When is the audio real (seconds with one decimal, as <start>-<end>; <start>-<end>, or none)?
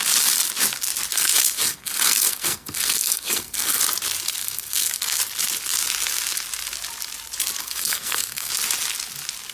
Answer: 0.0-1.1; 3.8-4.4; 5.2-7.6; 8.5-9.5